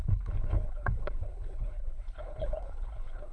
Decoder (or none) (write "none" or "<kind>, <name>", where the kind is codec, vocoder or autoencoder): codec, HILCodec